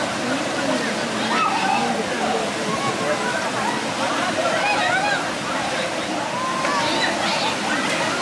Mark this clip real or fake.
real